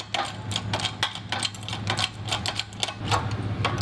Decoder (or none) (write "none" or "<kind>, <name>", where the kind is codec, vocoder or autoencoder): none